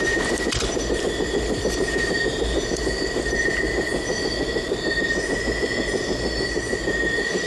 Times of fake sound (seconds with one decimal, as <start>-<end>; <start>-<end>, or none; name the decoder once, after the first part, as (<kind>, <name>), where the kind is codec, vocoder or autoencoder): 0.0-3.9 (vocoder, BigVGAN v2); 5.0-7.5